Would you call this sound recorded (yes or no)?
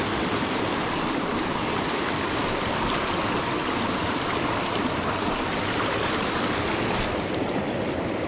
yes